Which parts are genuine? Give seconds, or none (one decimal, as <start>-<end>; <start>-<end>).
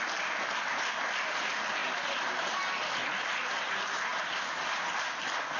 0.0-5.6